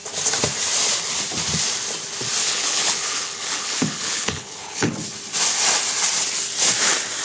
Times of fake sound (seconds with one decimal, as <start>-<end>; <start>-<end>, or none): 2.4-4.9